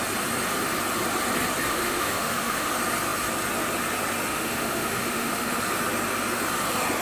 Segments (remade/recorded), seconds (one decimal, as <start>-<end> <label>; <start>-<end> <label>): 0.0-1.7 recorded; 1.7-2.7 remade; 2.7-4.3 recorded; 4.3-5.6 remade; 5.6-7.0 recorded